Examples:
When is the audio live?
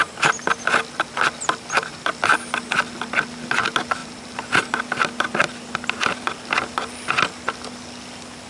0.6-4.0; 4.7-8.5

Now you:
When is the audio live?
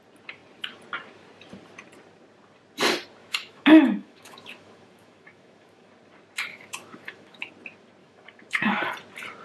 0.0-3.2; 5.9-6.5; 7.5-8.0; 8.8-9.4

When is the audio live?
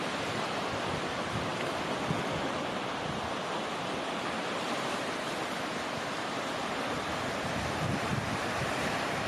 8.1-8.7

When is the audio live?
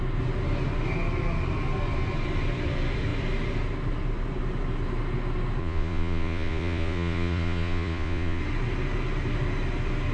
0.0-5.6; 8.4-10.1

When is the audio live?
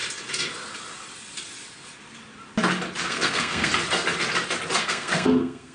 0.0-3.1; 3.7-4.8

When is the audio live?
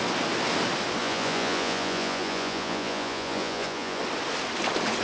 0.0-1.0; 4.0-5.0